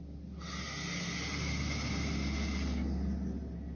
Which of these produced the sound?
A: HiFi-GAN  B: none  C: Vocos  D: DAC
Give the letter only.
B